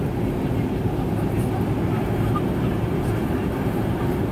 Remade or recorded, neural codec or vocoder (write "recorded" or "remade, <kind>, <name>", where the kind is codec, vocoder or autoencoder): recorded